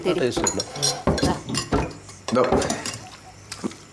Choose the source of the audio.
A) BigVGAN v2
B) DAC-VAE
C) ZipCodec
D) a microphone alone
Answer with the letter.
A